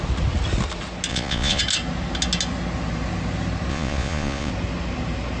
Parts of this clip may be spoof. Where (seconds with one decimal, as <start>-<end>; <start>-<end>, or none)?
1.1-1.6; 3.7-4.5